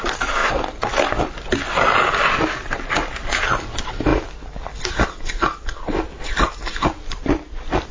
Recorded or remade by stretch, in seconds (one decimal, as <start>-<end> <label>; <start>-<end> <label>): 0.0-7.9 recorded